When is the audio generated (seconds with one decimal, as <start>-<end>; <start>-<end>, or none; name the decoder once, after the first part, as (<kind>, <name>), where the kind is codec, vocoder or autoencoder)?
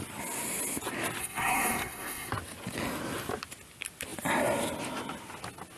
1.2-2.3 (codec, SNAC)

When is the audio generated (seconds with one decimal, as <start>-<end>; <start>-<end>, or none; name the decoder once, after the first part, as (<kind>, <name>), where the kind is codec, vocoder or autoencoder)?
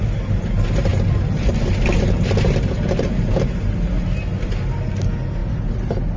none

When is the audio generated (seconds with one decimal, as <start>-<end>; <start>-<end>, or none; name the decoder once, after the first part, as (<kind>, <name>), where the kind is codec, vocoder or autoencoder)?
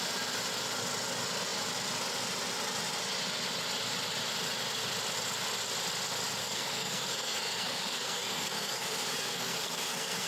6.4-10.3 (codec, SNAC)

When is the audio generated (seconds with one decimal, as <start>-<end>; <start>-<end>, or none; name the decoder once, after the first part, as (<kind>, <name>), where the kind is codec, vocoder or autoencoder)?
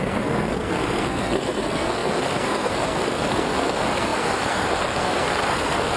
0.0-6.0 (codec, SNAC)